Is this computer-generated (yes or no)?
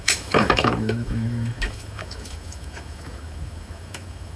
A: yes